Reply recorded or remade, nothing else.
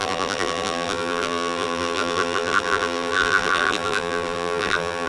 remade